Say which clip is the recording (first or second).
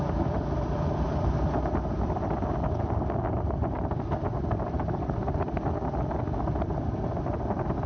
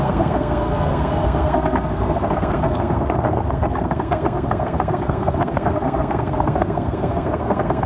first